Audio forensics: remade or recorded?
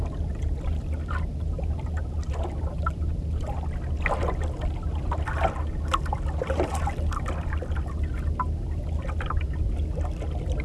recorded